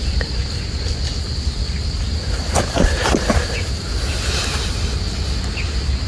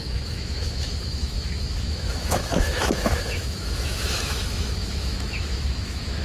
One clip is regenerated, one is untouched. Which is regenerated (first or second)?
second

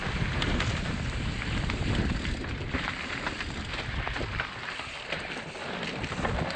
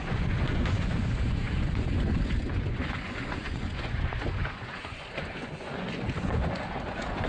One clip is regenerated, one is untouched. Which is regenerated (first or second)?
second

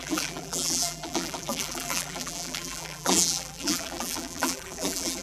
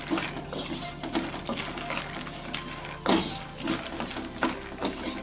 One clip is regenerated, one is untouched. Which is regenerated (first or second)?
first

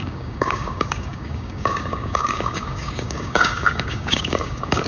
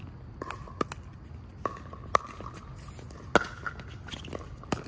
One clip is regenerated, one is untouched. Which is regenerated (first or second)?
first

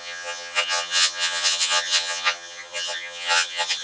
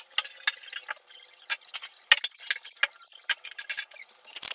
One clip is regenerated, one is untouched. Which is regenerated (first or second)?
first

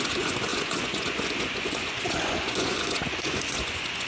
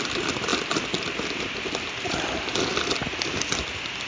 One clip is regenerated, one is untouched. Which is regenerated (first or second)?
first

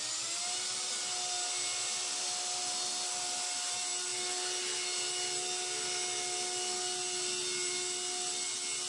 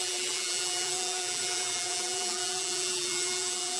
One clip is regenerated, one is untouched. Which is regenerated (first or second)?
second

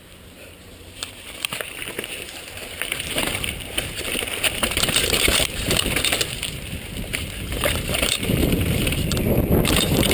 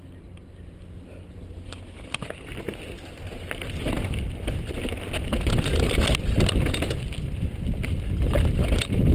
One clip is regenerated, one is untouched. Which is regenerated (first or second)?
first